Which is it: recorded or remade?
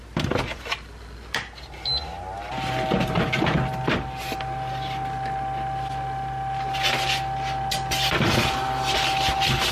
recorded